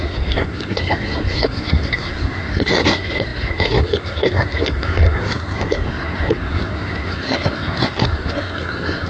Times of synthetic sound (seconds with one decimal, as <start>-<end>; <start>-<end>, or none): 0.0-9.1